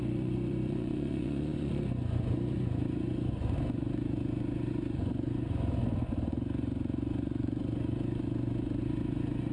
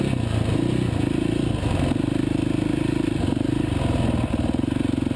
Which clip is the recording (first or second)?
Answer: second